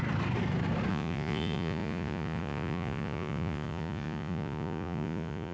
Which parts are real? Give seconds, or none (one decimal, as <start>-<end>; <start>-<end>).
0.0-0.9